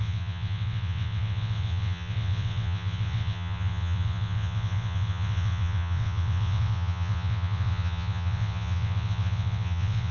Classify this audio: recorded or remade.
remade